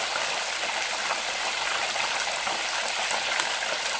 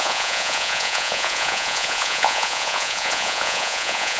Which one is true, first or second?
first